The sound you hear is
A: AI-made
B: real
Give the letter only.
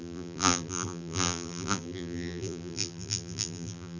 A